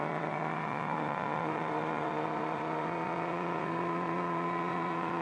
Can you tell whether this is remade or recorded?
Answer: remade